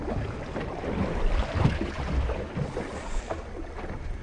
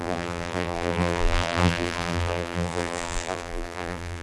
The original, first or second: first